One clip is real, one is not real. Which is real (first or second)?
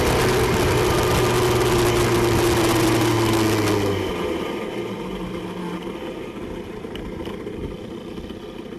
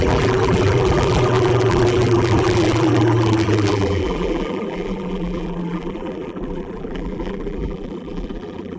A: first